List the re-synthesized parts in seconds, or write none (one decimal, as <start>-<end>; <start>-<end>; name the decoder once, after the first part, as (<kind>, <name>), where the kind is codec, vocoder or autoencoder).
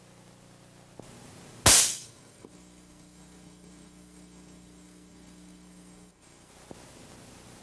1.9-6.5 (codec, SNAC)